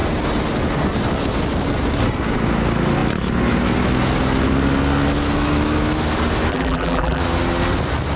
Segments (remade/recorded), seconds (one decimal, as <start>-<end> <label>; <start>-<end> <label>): 0.0-6.5 recorded; 6.5-7.2 remade; 7.2-8.2 recorded